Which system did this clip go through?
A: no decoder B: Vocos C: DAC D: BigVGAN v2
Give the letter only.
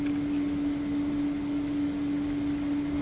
A